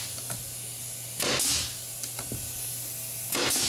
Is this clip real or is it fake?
real